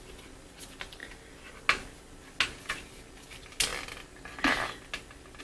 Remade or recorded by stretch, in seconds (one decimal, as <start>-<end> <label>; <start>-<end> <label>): 0.0-5.4 recorded